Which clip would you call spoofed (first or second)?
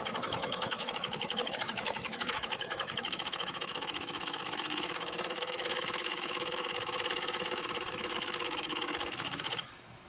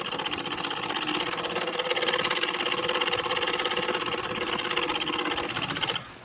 first